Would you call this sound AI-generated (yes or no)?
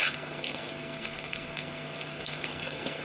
yes